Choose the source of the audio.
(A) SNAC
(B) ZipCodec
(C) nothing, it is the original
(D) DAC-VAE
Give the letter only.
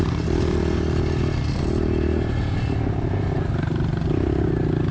C